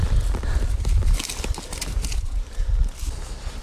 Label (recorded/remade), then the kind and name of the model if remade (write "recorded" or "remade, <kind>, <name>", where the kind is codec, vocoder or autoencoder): remade, vocoder, BigVGAN v2